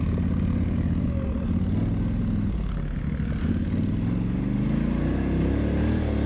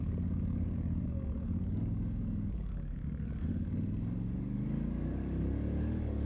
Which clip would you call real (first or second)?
first